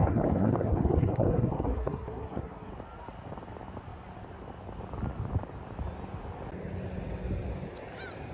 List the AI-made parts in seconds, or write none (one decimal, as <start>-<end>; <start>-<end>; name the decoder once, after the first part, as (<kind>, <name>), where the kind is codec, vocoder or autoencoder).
0.0-2.7 (codec, SNAC)